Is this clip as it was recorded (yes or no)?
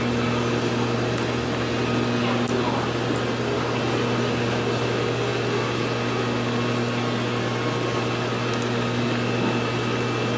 yes